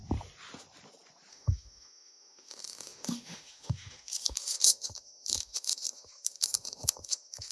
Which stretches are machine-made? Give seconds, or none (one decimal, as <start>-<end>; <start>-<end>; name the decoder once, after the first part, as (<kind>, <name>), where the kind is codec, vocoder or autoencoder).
1.3-7.5 (autoencoder, DAC-VAE)